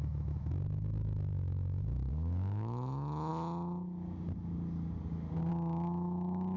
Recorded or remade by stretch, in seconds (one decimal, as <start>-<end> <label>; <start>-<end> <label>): 0.0-3.3 remade; 3.3-5.5 recorded; 5.5-6.6 remade